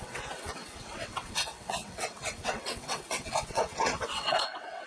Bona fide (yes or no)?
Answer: no